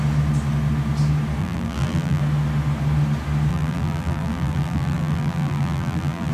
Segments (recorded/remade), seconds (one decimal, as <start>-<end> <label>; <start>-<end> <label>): 0.0-1.4 recorded; 1.4-2.2 remade; 2.2-3.5 recorded; 3.5-6.3 remade